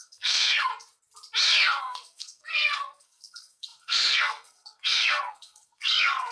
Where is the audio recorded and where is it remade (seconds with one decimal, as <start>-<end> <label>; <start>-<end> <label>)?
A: 0.0-0.7 remade; 0.7-1.8 recorded; 1.8-6.3 remade